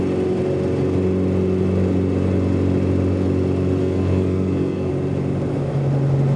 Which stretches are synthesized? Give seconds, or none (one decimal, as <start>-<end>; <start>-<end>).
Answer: 3.8-4.9